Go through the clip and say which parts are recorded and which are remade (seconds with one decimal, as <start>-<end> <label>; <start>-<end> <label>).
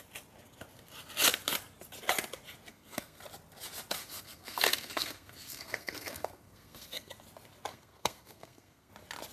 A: 0.0-2.7 recorded; 2.7-3.2 remade; 3.2-4.0 recorded; 4.0-7.1 remade; 7.1-7.7 recorded; 7.7-8.9 remade; 8.9-9.3 recorded